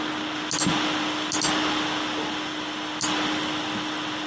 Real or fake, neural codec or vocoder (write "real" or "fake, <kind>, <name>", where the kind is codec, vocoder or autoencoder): real